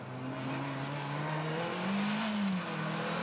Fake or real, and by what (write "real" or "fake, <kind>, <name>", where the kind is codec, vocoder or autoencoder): real